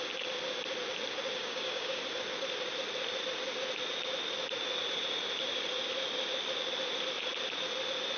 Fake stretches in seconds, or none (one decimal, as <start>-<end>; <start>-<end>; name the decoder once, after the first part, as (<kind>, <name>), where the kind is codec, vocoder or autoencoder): 1.4-2.0 (codec, DAC)